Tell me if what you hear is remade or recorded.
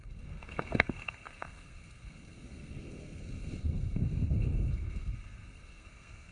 remade